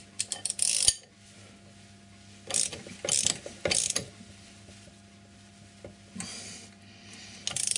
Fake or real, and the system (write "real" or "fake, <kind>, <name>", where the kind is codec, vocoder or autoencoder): real